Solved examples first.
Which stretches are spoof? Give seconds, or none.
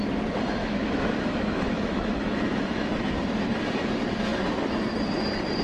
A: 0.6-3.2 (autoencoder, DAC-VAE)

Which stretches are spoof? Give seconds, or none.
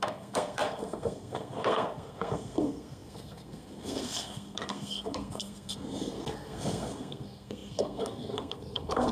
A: 0.0-9.1 (codec, SNAC)